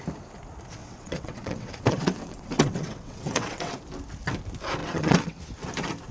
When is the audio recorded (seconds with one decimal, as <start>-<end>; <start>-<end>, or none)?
0.0-0.8; 3.7-4.8; 5.4-6.1